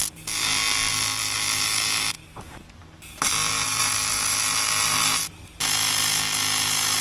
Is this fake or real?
real